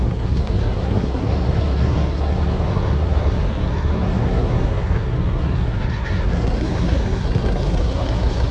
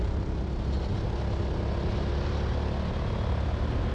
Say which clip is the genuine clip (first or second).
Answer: second